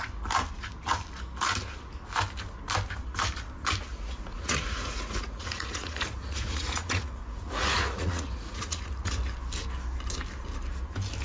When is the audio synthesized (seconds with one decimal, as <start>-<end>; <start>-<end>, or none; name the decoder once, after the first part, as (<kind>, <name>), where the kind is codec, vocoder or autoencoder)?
3.9-9.1 (vocoder, Vocos)